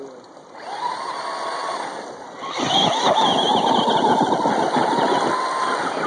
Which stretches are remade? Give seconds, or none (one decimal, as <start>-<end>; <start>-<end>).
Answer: none